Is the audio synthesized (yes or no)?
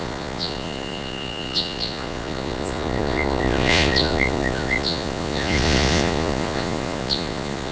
yes